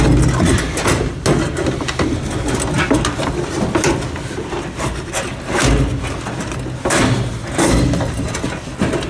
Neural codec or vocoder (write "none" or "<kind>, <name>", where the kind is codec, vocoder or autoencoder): none